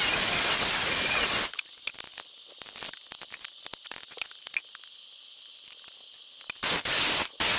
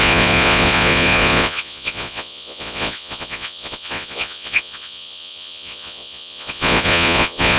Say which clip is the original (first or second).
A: first